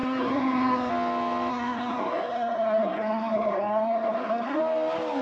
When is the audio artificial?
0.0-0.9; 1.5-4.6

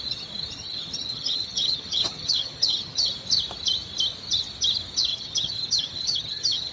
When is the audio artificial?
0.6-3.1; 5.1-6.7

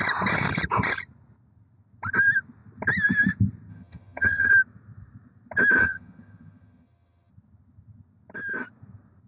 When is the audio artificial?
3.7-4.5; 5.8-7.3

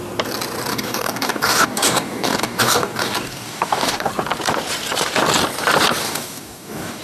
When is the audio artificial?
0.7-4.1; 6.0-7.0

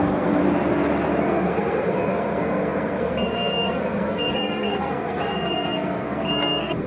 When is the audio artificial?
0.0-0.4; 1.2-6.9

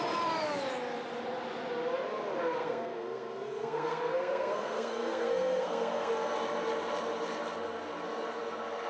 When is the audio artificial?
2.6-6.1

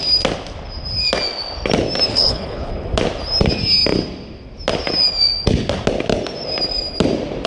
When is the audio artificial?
2.1-2.7